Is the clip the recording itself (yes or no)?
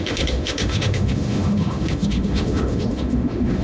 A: no